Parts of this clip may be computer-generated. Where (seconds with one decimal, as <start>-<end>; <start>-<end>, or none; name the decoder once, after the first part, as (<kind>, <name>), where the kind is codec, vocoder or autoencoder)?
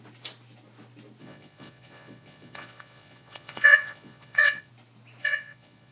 1.2-4.7 (vocoder, Vocos); 5.2-5.9